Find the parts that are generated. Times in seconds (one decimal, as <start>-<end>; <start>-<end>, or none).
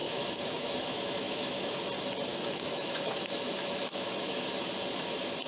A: 0.0-1.7; 2.3-4.4